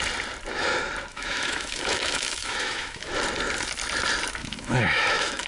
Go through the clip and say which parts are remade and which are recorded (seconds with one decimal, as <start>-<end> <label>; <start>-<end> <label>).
0.0-1.1 recorded; 1.1-3.1 remade; 3.1-4.4 recorded; 4.4-5.5 remade